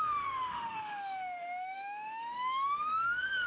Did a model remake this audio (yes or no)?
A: yes